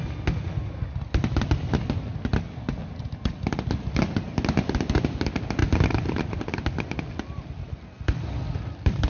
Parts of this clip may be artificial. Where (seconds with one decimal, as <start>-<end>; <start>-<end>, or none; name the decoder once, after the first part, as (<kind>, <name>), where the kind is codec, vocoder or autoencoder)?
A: 5.6-6.6 (vocoder, BigVGAN v2)